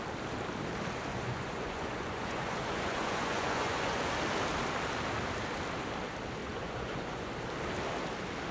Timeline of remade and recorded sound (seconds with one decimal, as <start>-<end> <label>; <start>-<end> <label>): 0.0-1.1 recorded; 1.1-4.1 remade; 4.1-6.4 recorded; 6.4-7.3 remade; 7.3-8.5 recorded